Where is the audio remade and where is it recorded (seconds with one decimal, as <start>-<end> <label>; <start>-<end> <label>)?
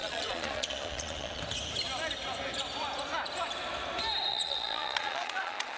0.0-1.4 remade; 1.4-4.3 recorded; 4.3-5.8 remade